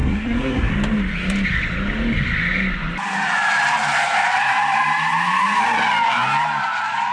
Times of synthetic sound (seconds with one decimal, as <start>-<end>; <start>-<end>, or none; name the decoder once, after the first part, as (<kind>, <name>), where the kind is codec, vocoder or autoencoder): 0.0-0.7 (codec, SNAC)